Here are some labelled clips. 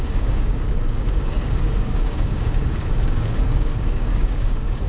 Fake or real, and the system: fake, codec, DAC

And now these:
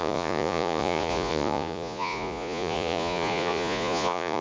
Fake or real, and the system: fake, vocoder, Vocos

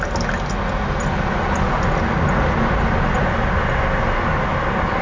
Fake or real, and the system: real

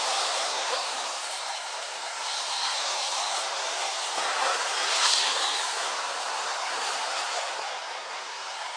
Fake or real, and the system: fake, codec, SNAC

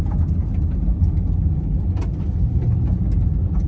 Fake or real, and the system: real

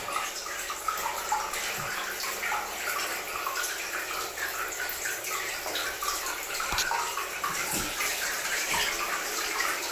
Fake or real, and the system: real